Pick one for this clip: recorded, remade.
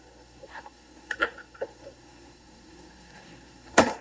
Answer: remade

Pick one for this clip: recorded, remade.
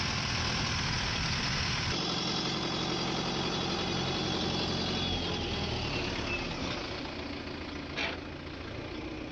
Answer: recorded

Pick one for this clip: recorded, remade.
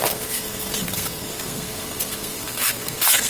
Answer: remade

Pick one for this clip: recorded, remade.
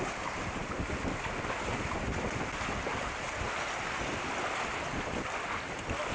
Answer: recorded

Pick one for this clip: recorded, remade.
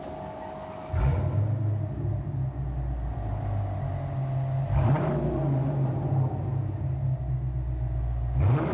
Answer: recorded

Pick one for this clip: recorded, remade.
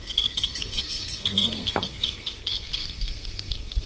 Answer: remade